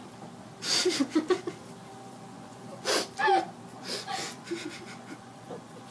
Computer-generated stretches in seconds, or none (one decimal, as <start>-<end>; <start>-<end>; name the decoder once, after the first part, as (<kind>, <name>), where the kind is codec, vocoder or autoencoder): 1.9-3.0 (vocoder, Vocos); 3.7-5.9